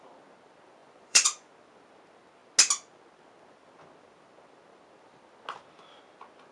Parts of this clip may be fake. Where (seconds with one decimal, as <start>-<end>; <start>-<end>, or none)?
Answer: 0.8-1.5